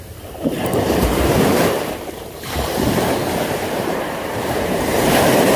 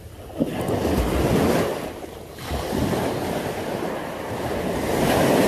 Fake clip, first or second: first